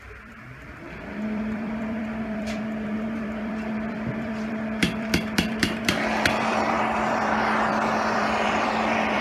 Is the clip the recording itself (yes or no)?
no